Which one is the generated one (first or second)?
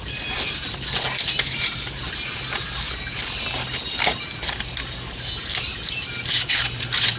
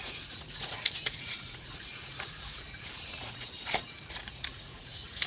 second